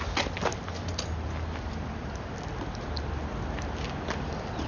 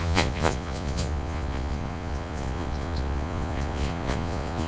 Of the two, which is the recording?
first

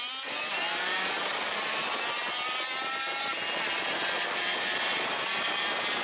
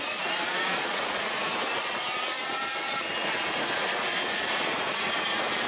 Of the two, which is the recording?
first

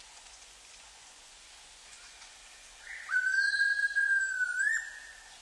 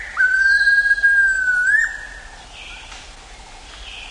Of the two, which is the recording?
second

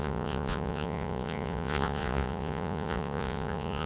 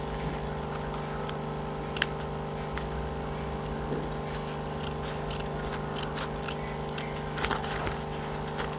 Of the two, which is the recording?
second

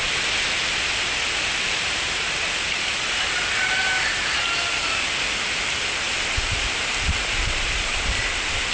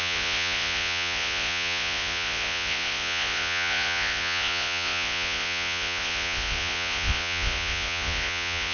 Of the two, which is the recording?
first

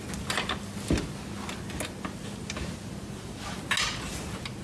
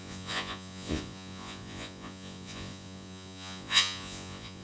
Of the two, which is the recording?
first